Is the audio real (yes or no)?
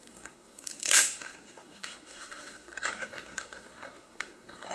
no